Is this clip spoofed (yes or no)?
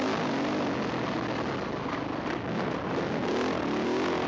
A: no